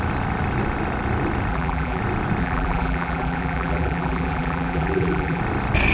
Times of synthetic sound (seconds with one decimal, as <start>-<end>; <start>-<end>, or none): 1.5-2.0; 2.4-5.4